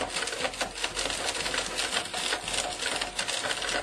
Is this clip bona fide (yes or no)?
yes